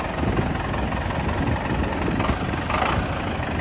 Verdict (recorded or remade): recorded